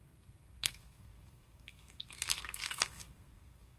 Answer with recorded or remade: remade